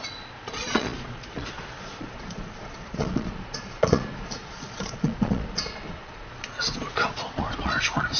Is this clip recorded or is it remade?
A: remade